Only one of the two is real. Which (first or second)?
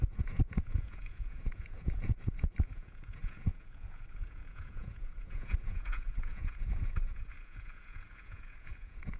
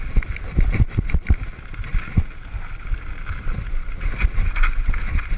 second